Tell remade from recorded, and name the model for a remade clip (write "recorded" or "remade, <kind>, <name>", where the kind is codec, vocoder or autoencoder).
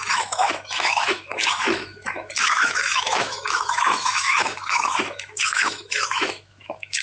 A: remade, autoencoder, DAC-VAE